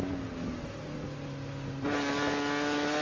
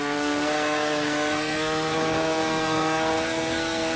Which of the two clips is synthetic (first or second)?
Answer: second